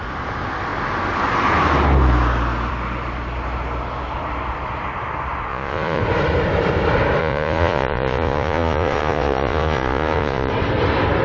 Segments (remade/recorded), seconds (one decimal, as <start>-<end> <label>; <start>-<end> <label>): 0.0-5.5 recorded; 5.5-6.0 remade; 6.0-7.2 recorded; 7.2-10.5 remade; 10.5-11.2 recorded